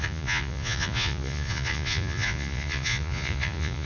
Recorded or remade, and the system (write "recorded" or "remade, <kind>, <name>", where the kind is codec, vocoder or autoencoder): remade, vocoder, Vocos